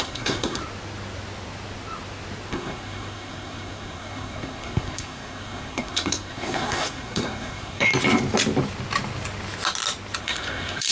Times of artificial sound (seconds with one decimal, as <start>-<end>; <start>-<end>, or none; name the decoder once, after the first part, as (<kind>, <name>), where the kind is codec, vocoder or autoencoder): 0.0-0.6 (codec, SNAC); 2.5-7.9; 10.2-10.9

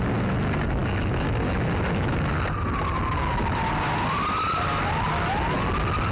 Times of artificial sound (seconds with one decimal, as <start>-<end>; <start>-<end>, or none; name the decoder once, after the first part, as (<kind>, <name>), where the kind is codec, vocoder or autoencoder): none

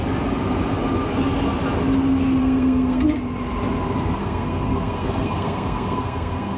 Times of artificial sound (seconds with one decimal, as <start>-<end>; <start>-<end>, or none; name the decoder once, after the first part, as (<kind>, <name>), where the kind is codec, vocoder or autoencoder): 2.4-3.0 (codec, SNAC); 4.2-6.6

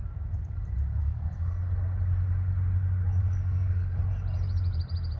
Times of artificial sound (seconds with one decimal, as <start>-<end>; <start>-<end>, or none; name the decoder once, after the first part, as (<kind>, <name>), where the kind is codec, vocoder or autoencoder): 1.0-1.6 (codec, SNAC); 3.2-4.0